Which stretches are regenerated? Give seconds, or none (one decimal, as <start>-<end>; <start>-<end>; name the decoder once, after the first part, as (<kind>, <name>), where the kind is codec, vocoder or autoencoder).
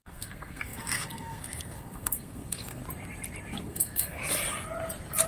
0.0-2.8 (codec, SNAC); 3.6-4.2